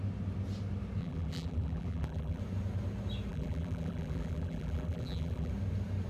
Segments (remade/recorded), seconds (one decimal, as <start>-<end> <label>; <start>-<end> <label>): 0.0-1.0 recorded; 1.0-2.4 remade; 2.4-3.3 recorded; 3.3-5.5 remade; 5.5-6.1 recorded